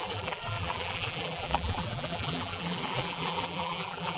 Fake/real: fake